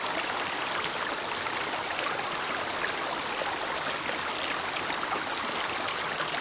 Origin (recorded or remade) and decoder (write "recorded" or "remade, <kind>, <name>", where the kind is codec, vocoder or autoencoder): recorded